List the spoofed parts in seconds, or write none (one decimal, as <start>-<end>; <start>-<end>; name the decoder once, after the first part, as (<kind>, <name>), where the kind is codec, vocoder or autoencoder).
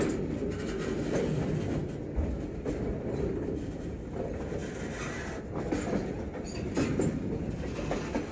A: none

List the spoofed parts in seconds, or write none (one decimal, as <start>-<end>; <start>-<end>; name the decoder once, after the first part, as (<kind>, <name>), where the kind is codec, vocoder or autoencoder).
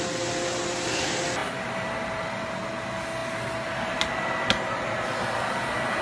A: 1.4-2.5 (vocoder, BigVGAN v2); 3.2-4.1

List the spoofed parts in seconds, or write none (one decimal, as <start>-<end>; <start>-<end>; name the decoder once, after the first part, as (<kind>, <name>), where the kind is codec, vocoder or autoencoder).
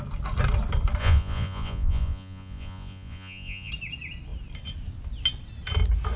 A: 1.0-3.7 (vocoder, Vocos)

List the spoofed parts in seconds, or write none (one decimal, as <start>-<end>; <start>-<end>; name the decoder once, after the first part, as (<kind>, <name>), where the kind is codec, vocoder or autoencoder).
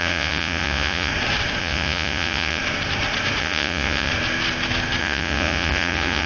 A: 0.0-1.1 (vocoder, Vocos); 1.6-2.6; 3.4-4.1; 5.0-6.3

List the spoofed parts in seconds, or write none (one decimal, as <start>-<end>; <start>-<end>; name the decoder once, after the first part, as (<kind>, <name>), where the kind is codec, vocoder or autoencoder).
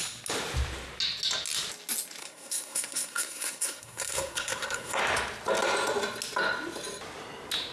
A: 2.2-5.0 (codec, SNAC)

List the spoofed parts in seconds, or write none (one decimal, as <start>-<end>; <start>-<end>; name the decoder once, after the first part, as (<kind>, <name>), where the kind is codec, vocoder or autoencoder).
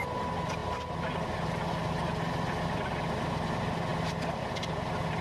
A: none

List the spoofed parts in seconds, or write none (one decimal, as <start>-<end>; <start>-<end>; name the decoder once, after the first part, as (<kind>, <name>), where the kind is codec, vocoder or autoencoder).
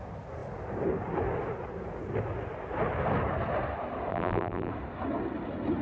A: 4.1-4.7 (vocoder, BigVGAN v2)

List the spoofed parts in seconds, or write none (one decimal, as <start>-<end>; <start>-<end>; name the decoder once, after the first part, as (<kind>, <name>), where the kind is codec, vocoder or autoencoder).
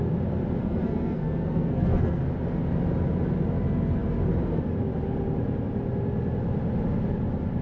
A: 0.6-2.2 (codec, SNAC)